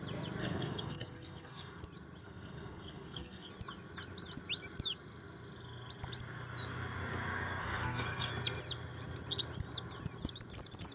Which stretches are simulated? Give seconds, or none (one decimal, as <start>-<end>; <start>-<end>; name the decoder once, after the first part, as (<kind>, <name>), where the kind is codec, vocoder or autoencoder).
0.4-1.8 (codec, SNAC); 2.2-3.5; 7.6-8.3